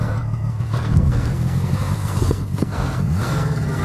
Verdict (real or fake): fake